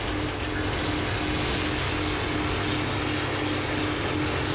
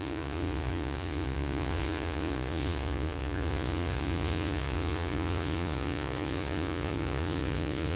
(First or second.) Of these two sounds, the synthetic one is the second